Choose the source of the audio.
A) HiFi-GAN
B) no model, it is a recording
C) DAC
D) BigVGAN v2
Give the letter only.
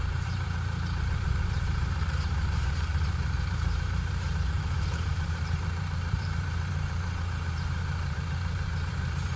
D